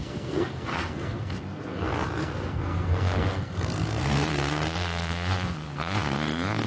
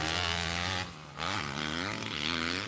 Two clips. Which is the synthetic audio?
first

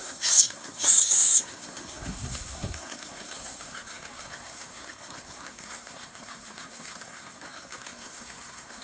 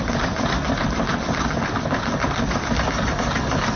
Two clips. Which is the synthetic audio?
first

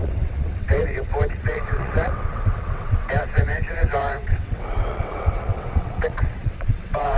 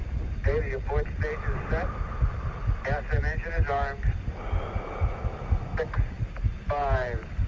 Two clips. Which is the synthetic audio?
first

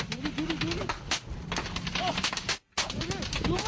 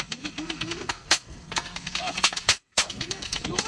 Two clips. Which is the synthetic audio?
second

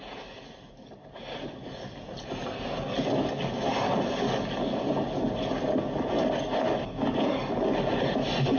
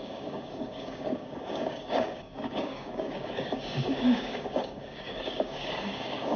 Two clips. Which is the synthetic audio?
second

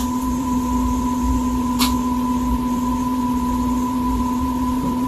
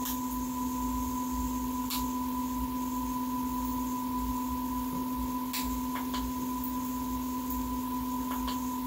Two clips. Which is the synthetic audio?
first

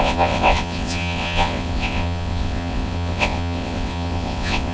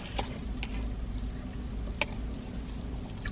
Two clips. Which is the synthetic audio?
first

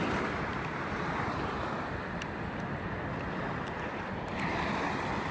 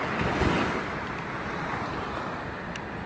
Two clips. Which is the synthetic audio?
first